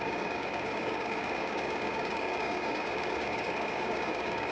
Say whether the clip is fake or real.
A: fake